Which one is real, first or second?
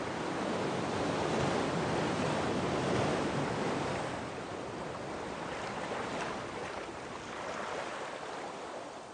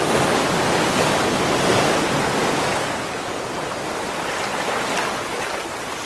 second